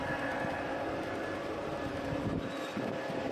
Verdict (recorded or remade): recorded